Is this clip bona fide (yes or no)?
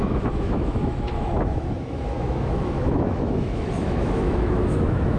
no